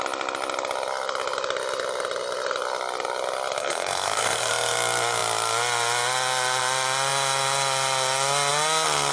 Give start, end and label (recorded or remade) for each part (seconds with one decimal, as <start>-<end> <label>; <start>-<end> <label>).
0.0-3.6 recorded; 3.6-4.5 remade; 4.5-9.1 recorded